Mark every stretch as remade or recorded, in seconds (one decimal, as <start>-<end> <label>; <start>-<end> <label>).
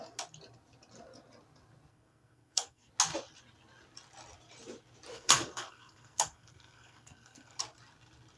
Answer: 0.0-1.9 recorded; 1.9-2.9 remade; 2.9-5.1 recorded; 5.1-7.6 remade; 7.6-8.4 recorded